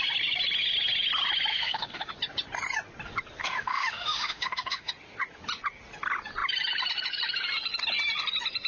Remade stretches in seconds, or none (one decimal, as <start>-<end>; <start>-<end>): 1.5-2.1; 3.4-4.9